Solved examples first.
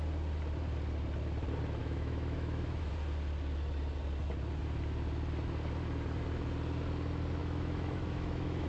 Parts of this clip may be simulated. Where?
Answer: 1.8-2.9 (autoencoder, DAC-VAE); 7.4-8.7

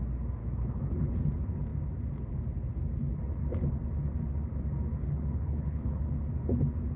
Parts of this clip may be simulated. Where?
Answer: 0.4-1.1 (codec, HILCodec); 4.9-6.2